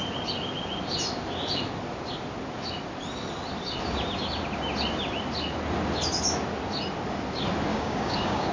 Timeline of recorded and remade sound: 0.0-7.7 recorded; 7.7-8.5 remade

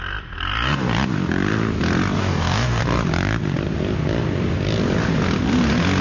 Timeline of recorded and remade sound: 0.0-2.2 recorded; 2.2-2.8 remade; 2.8-6.0 recorded